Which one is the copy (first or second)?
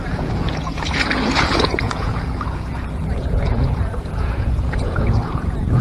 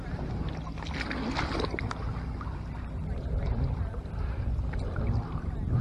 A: first